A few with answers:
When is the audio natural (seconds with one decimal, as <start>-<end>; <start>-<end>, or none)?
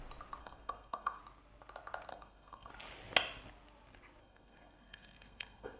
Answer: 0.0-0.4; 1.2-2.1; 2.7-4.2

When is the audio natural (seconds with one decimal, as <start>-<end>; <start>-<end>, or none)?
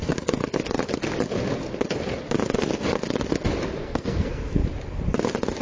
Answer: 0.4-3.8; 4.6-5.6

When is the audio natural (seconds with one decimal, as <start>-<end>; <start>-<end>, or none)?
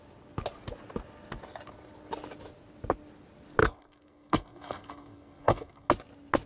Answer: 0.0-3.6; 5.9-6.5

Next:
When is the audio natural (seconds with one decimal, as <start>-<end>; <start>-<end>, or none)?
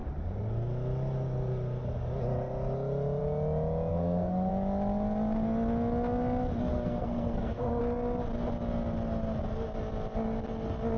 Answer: 0.0-3.9; 4.5-6.7; 7.8-11.0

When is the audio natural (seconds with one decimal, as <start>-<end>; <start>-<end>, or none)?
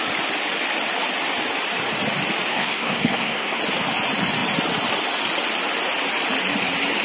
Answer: 0.0-2.5; 3.6-7.0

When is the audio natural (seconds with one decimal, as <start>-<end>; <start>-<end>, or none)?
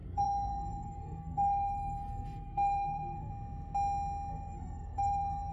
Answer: 3.3-4.3